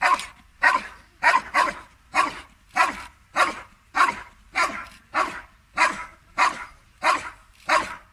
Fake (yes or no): yes